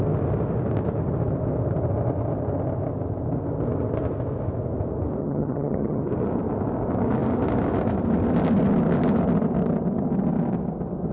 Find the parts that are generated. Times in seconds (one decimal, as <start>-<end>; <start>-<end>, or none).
5.2-6.1